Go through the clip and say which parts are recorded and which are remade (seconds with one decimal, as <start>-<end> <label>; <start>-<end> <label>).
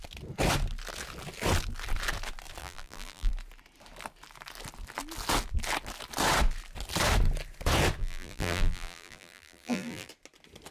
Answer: 0.0-2.6 recorded; 2.6-3.3 remade; 3.3-8.0 recorded; 8.0-10.1 remade; 10.1-10.7 recorded